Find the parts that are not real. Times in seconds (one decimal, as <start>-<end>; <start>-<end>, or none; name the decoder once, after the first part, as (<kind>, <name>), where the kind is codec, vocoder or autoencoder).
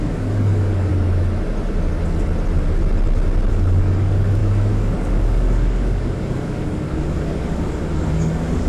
0.0-0.9 (codec, DAC); 3.5-8.7